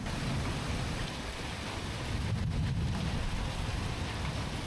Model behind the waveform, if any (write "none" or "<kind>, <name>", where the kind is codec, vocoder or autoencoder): none